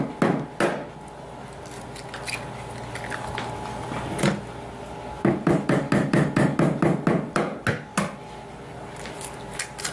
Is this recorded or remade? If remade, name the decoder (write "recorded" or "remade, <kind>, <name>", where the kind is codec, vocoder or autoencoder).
recorded